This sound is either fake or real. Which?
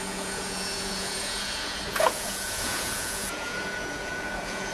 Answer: fake